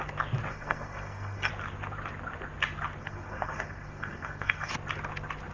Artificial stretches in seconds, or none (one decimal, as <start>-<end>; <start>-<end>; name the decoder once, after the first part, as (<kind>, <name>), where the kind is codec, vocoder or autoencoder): 0.5-1.5 (codec, SNAC); 3.0-4.7